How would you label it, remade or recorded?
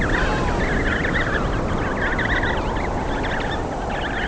recorded